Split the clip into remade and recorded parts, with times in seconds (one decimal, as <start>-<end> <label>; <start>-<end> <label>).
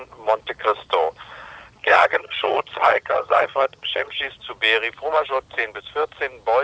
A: 0.0-1.8 recorded; 1.8-4.2 remade; 4.2-6.6 recorded